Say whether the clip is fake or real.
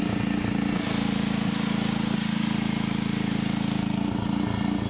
real